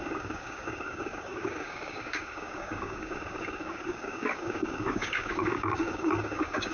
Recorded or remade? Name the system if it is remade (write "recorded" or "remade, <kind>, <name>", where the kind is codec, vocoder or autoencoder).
remade, codec, DAC